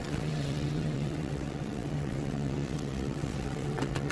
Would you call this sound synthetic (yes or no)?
yes